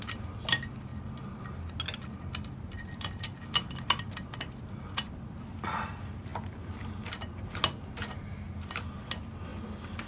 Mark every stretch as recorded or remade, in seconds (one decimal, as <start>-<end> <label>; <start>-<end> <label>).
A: 0.0-10.1 recorded

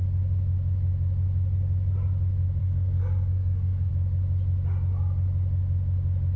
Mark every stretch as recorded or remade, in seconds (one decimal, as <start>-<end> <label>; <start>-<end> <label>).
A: 0.0-2.6 recorded; 2.6-3.9 remade; 3.9-6.4 recorded

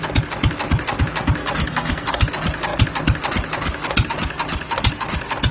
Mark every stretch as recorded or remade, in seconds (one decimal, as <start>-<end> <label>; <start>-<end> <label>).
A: 0.0-1.4 recorded; 1.4-2.3 remade; 2.3-5.5 recorded

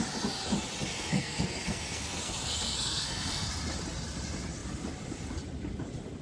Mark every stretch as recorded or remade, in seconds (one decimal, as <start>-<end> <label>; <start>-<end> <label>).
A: 0.0-0.9 recorded; 0.9-3.5 remade; 3.5-6.2 recorded

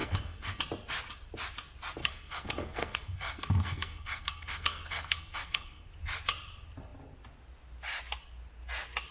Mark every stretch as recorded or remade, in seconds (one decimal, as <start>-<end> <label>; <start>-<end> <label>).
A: 0.0-0.6 remade; 0.6-2.0 recorded; 2.0-5.9 remade; 5.9-9.1 recorded

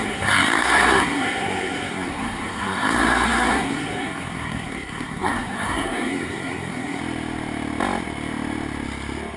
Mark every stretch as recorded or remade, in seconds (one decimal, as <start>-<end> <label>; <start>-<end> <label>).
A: 0.0-7.0 remade; 7.0-9.4 recorded

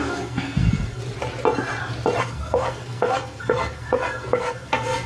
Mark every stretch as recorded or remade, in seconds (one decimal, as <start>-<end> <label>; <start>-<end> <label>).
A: 0.0-1.0 remade; 1.0-2.2 recorded; 2.2-5.1 remade

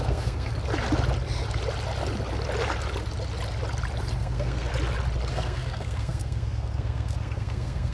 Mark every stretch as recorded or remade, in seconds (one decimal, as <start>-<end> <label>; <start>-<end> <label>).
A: 0.0-0.5 remade; 0.5-4.2 recorded; 4.2-4.7 remade; 4.7-5.3 recorded; 5.3-7.9 remade